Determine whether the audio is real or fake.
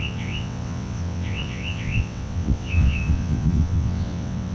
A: fake